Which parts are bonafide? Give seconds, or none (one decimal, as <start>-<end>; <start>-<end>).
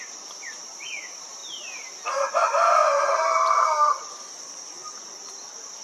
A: 0.0-5.8